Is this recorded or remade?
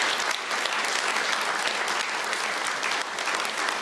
recorded